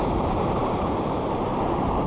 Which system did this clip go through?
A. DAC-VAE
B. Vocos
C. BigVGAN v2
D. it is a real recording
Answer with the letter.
C